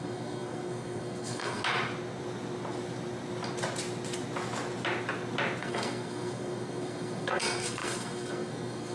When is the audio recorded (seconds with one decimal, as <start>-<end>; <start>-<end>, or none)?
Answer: 1.6-5.6